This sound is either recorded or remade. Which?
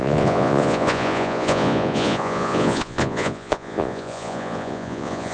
remade